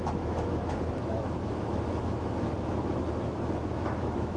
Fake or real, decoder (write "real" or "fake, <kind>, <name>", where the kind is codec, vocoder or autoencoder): fake, autoencoder, DAC-VAE